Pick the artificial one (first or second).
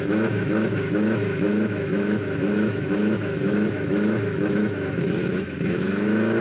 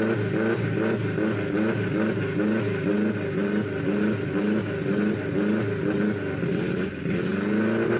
first